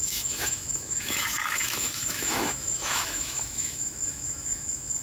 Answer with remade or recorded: remade